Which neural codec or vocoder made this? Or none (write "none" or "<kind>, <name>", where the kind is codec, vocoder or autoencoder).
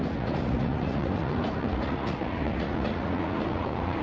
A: vocoder, Vocos